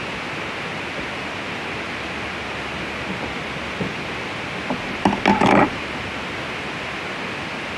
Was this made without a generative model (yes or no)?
yes